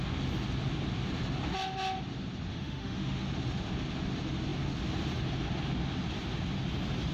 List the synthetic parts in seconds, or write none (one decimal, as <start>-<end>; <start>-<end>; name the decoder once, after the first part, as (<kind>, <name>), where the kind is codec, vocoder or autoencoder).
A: 2.5-3.2 (autoencoder, DAC-VAE)

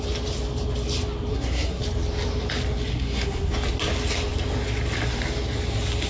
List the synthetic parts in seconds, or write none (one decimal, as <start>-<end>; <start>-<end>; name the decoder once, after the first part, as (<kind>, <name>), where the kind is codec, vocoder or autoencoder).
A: 1.3-1.8 (codec, SNAC); 2.9-3.5

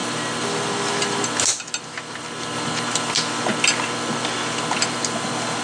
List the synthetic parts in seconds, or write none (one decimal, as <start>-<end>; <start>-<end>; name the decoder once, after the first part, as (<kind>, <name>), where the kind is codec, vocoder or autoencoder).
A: none

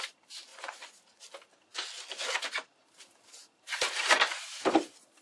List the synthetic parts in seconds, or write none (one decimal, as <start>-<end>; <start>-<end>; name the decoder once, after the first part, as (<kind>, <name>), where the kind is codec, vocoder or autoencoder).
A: 0.5-1.2 (vocoder, Vocos)